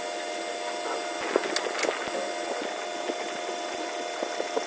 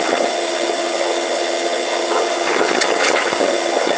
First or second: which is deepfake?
second